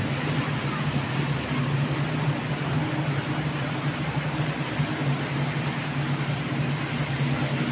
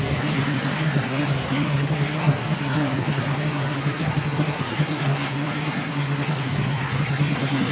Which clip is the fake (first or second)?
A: second